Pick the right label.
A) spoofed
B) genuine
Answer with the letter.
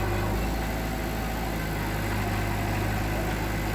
B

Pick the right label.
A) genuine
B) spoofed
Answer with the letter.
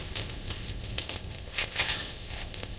B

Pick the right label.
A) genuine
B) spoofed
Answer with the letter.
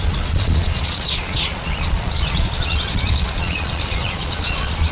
B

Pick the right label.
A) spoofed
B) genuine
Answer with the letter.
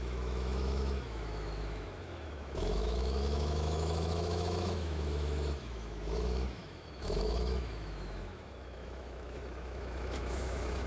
A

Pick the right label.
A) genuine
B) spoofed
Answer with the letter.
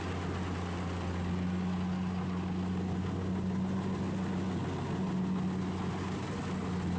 A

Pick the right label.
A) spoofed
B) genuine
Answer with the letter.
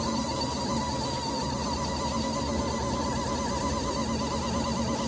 B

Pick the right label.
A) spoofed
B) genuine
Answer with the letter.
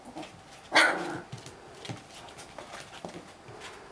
B